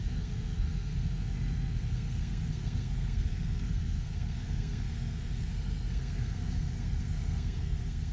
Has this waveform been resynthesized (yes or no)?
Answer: yes